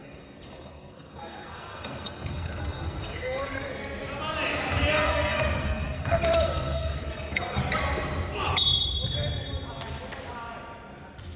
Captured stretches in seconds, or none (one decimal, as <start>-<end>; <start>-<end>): 3.8-4.9; 7.6-11.4